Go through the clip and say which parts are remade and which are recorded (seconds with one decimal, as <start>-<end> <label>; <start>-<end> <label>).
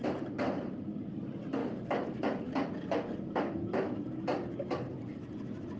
0.0-1.6 remade; 1.6-2.4 recorded; 2.4-4.3 remade; 4.3-4.9 recorded; 4.9-5.8 remade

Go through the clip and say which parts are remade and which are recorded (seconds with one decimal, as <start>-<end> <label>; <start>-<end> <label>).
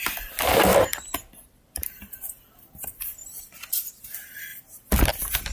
0.0-0.7 recorded; 0.7-1.9 remade; 1.9-3.2 recorded; 3.2-3.9 remade; 3.9-4.5 recorded; 4.5-5.1 remade; 5.1-5.5 recorded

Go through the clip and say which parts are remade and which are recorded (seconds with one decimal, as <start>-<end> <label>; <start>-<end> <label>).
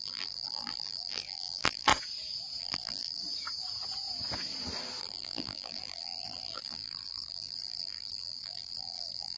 0.0-1.9 remade; 1.9-2.6 recorded; 2.6-3.2 remade; 3.2-5.0 recorded; 5.0-9.4 remade